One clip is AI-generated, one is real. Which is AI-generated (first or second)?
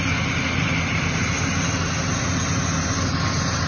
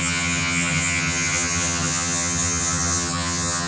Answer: second